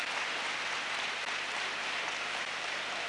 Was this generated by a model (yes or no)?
yes